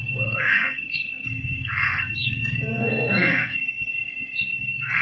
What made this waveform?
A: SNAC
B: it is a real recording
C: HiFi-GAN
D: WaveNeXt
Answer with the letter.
A